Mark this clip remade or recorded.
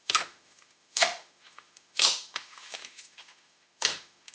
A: remade